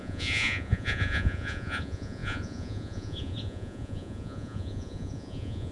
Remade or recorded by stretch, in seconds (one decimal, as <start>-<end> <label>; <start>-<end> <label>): 0.0-5.7 remade

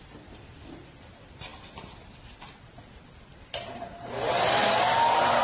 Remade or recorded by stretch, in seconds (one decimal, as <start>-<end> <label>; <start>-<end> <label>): 0.0-5.4 remade

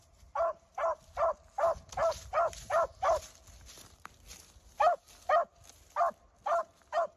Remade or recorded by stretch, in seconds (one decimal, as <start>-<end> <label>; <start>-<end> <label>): 0.0-7.2 recorded

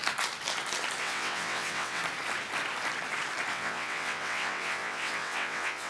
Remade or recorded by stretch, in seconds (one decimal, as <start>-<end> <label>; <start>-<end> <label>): 0.0-1.0 recorded; 1.0-2.0 remade; 2.0-3.5 recorded; 3.5-5.9 remade

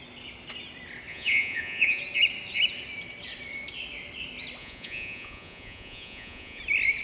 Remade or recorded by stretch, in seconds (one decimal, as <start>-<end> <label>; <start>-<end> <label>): 0.0-1.1 recorded; 1.1-2.0 remade; 2.0-4.6 recorded; 4.6-6.6 remade; 6.6-7.0 recorded

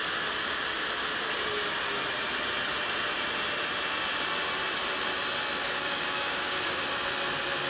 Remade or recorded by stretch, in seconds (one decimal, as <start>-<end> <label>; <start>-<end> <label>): 0.0-5.6 recorded; 5.6-6.8 remade; 6.8-7.7 recorded